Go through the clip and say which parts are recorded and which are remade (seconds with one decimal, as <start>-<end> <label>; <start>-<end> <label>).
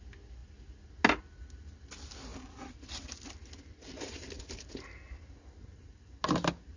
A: 0.0-6.8 recorded